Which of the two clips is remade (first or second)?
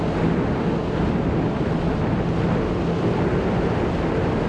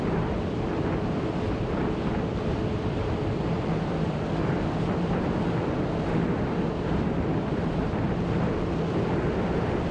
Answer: second